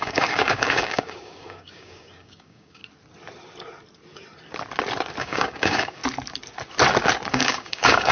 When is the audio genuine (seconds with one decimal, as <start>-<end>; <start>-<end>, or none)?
2.8-5.2; 6.0-7.3